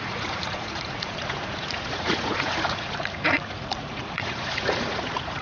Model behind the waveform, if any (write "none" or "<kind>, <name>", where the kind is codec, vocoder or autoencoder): vocoder, Vocos